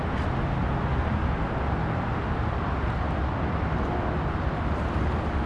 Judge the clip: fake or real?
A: real